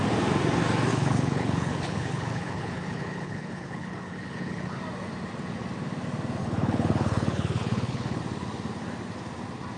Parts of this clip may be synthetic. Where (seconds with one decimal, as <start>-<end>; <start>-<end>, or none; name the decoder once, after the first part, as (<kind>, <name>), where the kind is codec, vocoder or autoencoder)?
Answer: 0.9-4.8 (codec, HILCodec); 6.4-8.2